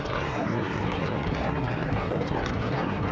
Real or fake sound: fake